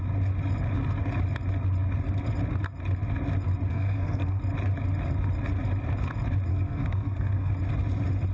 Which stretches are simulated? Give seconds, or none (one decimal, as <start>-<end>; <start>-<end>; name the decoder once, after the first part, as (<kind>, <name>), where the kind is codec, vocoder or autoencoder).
3.7-4.4 (codec, SNAC); 6.5-7.5